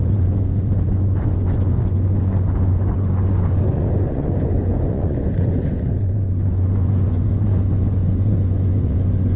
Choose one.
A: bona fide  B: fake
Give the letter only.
B